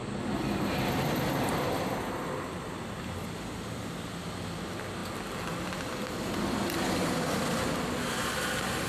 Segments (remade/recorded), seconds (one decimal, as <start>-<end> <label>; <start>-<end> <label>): 0.0-8.9 recorded